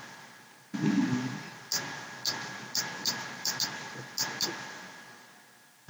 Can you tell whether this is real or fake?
real